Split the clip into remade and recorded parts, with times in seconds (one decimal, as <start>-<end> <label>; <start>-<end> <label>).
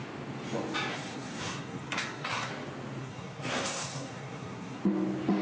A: 0.0-0.9 recorded; 0.9-2.5 remade; 2.5-3.0 recorded; 3.0-4.8 remade; 4.8-5.4 recorded